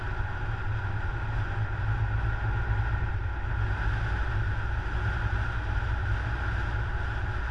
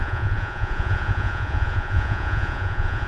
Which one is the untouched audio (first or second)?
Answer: first